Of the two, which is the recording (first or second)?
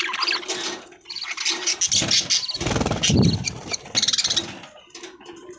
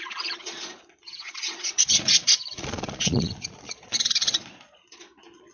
first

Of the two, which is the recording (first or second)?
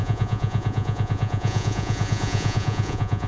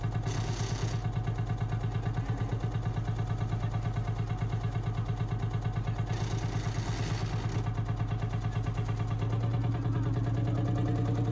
second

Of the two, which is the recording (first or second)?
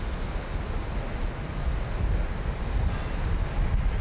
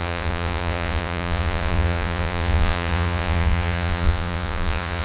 first